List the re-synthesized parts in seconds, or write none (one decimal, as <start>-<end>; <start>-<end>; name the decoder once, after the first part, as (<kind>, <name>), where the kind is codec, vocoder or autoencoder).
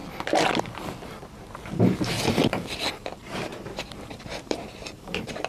3.0-5.5 (vocoder, BigVGAN v2)